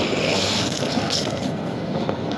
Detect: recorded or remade remade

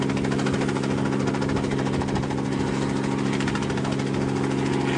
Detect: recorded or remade recorded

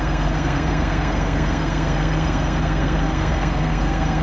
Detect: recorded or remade remade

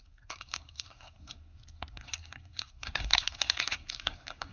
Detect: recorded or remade remade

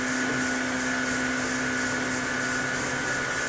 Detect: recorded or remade recorded